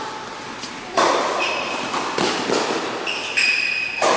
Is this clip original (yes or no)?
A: yes